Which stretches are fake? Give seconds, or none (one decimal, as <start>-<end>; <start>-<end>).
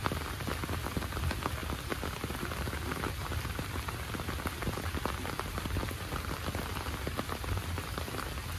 none